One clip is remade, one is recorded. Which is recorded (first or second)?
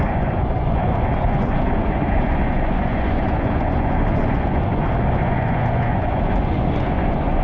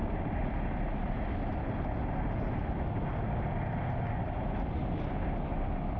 second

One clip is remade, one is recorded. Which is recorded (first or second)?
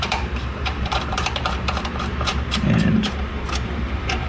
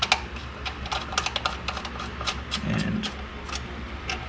second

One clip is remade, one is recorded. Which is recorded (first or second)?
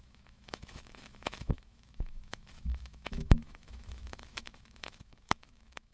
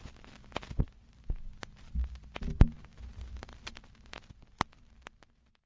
second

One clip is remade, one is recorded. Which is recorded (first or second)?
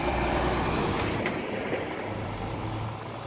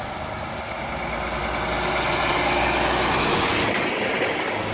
second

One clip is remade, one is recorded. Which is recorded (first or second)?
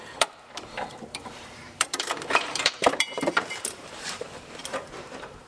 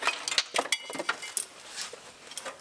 second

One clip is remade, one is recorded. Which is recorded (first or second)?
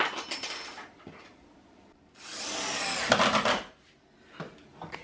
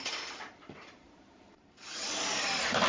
first